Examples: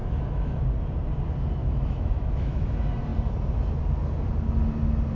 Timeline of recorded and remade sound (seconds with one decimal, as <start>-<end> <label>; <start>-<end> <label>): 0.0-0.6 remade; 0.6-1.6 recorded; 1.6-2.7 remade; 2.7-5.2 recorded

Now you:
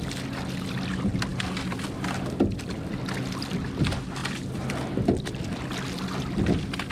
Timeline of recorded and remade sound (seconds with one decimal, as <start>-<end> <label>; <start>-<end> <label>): 0.0-4.2 recorded; 4.2-5.4 remade; 5.4-6.9 recorded

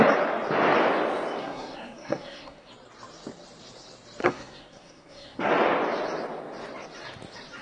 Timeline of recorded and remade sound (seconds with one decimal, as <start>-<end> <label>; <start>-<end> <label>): 0.0-1.4 recorded; 1.4-2.7 remade; 2.7-4.2 recorded; 4.2-5.5 remade; 5.5-7.6 recorded

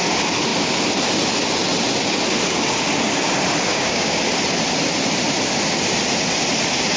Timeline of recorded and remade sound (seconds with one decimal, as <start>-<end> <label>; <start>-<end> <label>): 0.0-3.7 recorded; 3.7-4.2 remade; 4.2-7.0 recorded